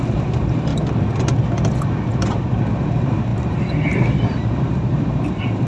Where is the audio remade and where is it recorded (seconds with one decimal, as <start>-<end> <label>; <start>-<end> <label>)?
0.0-0.7 remade; 0.7-2.7 recorded; 2.7-5.7 remade